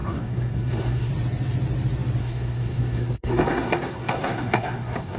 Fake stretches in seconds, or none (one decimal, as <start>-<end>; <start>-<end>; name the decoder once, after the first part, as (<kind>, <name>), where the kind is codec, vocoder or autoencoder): 0.0-1.1 (codec, SNAC); 2.2-5.2